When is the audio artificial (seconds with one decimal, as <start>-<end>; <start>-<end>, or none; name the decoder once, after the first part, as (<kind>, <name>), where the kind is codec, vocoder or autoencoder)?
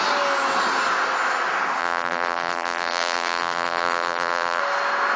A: 1.8-4.6 (vocoder, BigVGAN v2)